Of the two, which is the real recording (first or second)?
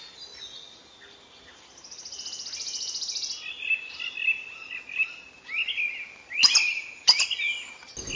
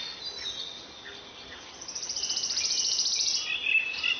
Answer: first